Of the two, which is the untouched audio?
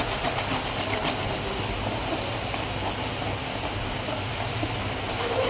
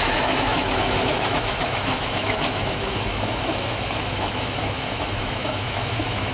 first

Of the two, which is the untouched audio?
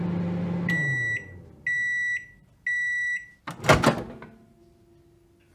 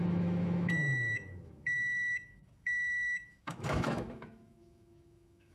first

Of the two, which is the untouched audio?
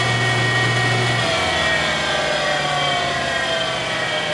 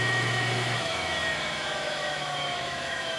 first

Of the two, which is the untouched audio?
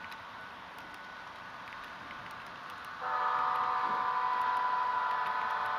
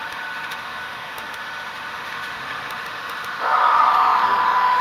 first